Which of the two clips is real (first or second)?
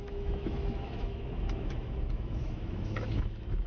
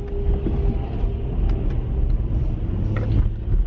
second